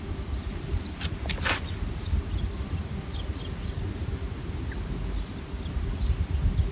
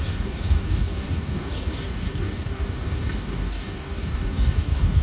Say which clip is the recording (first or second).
first